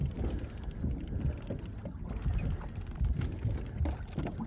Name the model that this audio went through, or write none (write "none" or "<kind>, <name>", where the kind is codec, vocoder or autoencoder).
none